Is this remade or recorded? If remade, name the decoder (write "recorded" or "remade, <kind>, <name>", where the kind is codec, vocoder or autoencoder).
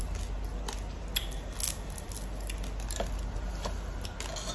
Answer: recorded